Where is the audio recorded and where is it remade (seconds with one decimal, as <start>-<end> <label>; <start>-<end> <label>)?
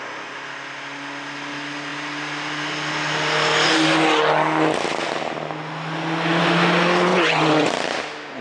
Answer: 0.0-7.1 recorded; 7.1-7.7 remade; 7.7-8.4 recorded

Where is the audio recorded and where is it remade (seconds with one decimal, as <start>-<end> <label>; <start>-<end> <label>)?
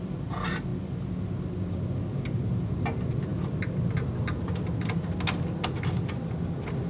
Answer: 0.0-6.9 recorded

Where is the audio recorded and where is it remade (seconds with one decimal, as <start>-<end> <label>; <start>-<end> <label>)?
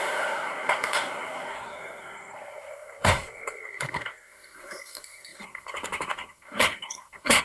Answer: 0.0-7.4 remade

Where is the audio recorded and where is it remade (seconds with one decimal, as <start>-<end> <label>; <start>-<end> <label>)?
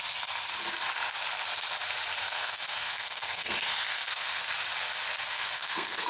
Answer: 0.0-2.2 recorded; 2.2-4.4 remade; 4.4-5.3 recorded; 5.3-6.1 remade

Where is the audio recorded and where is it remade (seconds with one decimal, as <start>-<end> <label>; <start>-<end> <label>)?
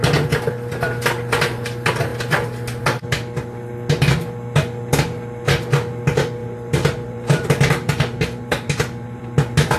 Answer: 0.0-6.4 recorded; 6.4-9.2 remade; 9.2-9.8 recorded